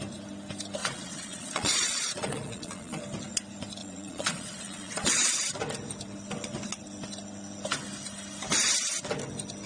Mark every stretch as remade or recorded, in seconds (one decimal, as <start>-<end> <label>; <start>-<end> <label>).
0.0-0.8 recorded; 0.8-3.0 remade; 3.0-3.8 recorded; 3.8-5.3 remade; 5.3-9.7 recorded